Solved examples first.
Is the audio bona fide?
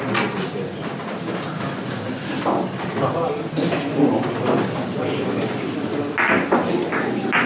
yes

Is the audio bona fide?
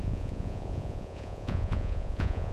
no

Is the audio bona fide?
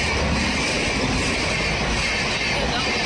yes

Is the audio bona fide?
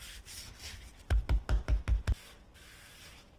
yes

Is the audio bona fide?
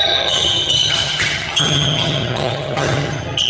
no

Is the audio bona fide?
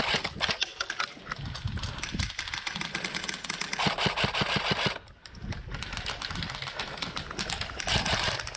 yes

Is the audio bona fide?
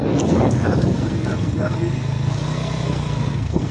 no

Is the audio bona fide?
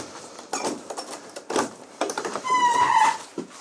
no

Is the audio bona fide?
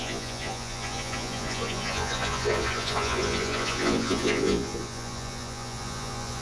no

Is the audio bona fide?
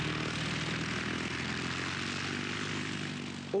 yes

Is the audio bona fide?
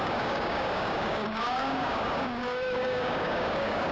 no